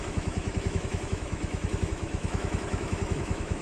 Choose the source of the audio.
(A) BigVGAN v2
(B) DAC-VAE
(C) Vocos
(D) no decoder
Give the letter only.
B